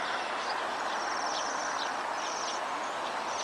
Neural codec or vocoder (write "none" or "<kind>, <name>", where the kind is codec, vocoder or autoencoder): none